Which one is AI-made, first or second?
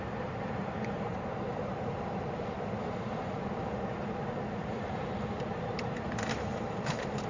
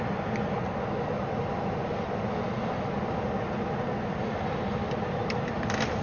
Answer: first